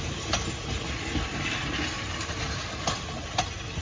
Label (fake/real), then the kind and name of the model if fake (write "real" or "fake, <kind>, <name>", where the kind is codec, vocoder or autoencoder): real